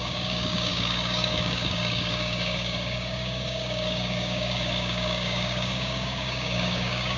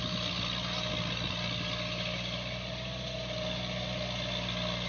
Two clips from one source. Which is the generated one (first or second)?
first